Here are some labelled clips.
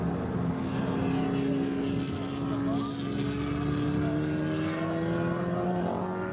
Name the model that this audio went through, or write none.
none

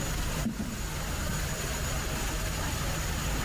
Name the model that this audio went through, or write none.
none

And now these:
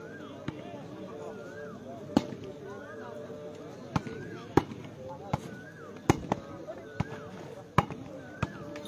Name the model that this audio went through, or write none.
none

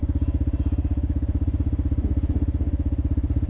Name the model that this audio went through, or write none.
none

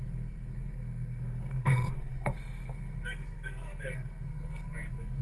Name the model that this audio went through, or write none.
codec, SNAC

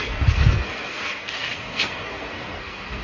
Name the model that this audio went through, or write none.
codec, SNAC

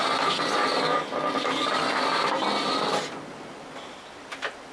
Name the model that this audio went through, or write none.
none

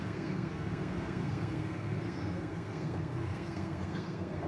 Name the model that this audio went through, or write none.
codec, SNAC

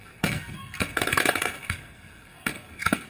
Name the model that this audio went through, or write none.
codec, SNAC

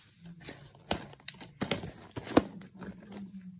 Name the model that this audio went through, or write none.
none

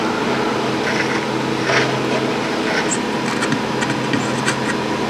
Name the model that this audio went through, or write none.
none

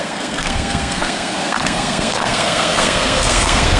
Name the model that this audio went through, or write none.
codec, SNAC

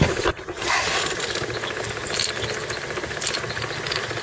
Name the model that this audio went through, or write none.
none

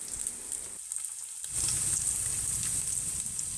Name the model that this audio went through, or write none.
none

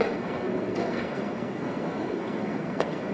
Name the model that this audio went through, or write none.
codec, SNAC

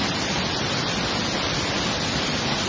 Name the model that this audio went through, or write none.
none